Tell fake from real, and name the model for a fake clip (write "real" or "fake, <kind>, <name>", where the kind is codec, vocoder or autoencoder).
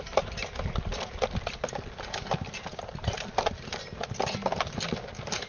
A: real